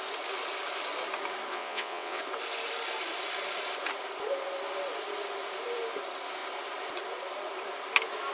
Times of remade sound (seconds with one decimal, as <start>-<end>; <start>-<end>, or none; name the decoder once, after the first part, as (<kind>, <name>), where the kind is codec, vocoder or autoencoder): 1.5-2.2 (vocoder, WaveNeXt)